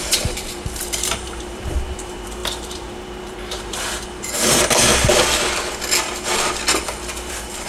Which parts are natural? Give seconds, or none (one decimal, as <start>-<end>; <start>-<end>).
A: 4.9-7.3